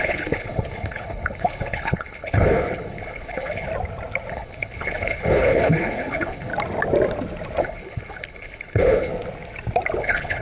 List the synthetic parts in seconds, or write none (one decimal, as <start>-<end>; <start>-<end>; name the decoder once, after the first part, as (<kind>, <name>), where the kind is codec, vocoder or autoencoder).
0.0-3.7 (codec, HILCodec); 4.3-6.5; 7.6-9.1; 10.0-10.4